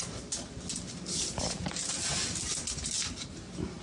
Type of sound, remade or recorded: recorded